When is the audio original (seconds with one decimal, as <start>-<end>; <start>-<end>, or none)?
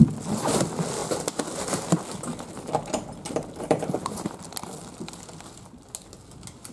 0.0-6.7